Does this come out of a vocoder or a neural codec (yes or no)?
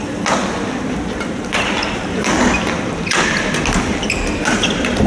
no